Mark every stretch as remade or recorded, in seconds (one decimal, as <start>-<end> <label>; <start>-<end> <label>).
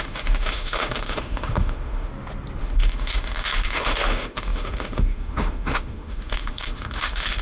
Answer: 0.0-2.1 remade; 2.1-2.6 recorded; 2.6-7.4 remade